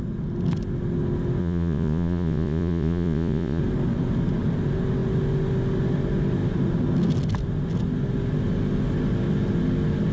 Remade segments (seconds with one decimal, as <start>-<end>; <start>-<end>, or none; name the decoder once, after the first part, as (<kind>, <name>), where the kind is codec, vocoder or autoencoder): 1.4-3.6 (vocoder, Vocos)